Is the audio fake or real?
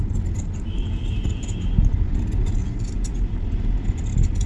real